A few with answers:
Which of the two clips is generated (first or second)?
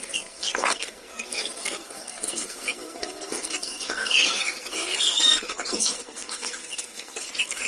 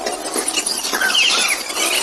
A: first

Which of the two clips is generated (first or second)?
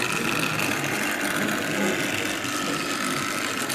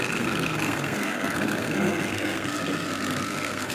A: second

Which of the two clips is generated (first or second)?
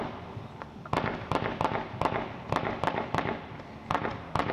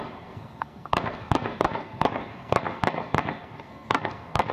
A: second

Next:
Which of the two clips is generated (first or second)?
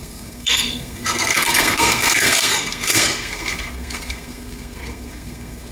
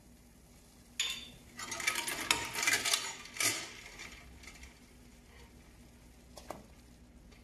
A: first